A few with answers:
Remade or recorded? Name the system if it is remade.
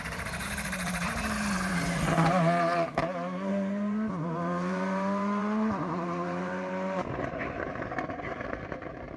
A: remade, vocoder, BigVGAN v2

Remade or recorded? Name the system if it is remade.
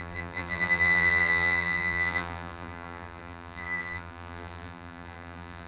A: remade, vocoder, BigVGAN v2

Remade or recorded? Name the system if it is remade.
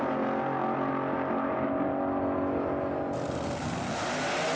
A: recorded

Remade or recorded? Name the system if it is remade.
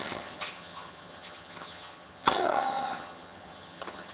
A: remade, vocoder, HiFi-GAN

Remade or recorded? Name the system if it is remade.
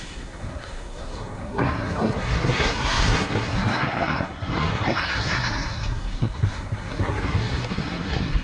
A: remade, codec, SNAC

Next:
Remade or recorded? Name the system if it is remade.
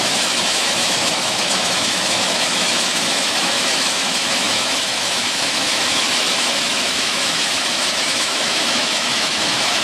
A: remade, autoencoder, DAC-VAE